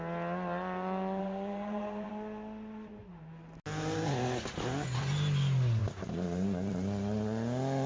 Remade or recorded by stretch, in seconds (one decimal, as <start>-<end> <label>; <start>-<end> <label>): 0.0-1.2 recorded; 1.2-2.1 remade; 2.1-5.8 recorded; 5.8-6.7 remade; 6.7-7.9 recorded